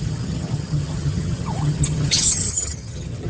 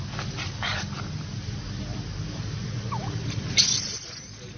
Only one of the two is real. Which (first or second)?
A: second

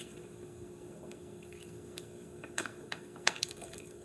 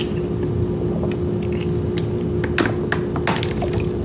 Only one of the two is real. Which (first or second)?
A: second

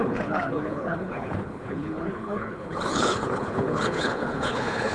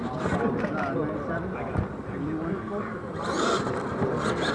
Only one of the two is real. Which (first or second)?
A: second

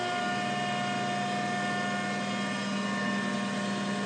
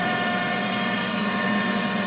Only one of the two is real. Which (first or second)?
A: first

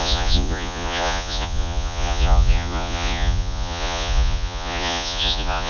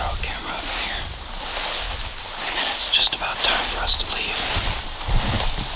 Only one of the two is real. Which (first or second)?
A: second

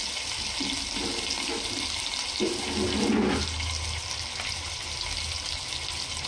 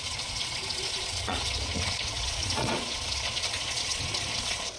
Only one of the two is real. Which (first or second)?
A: first